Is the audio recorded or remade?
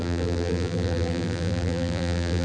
remade